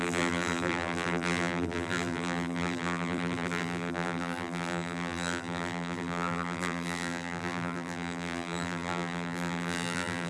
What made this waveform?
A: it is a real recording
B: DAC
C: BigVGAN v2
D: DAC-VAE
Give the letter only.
C